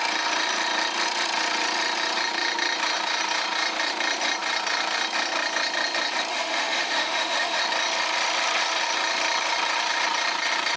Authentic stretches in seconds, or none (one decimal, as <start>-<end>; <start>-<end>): 0.0-6.3; 7.6-10.8